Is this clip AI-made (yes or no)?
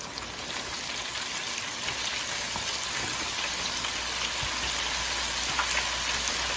no